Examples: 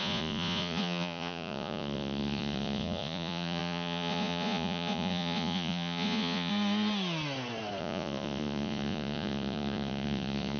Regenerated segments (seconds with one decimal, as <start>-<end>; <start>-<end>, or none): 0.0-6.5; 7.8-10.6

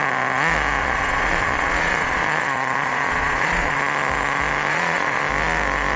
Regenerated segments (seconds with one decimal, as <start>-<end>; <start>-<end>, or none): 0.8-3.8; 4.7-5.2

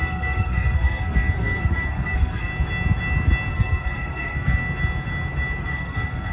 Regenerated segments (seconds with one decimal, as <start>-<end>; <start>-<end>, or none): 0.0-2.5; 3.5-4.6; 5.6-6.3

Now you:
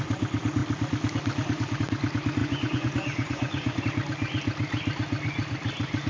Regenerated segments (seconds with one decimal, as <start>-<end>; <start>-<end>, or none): 2.4-3.8

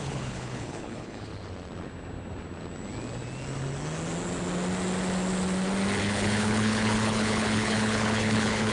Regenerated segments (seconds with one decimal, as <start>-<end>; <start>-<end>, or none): 0.0-1.3; 6.0-8.7